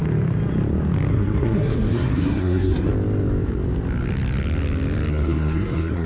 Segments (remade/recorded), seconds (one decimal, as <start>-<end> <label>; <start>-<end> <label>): 0.0-1.1 recorded; 1.1-2.9 remade; 2.9-5.1 recorded; 5.1-6.1 remade